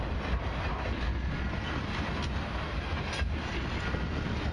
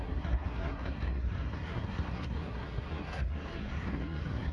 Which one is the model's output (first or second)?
second